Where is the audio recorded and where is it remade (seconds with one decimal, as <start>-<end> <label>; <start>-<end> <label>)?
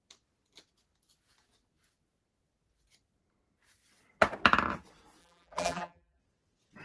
0.0-5.2 recorded; 5.2-6.2 remade; 6.2-6.8 recorded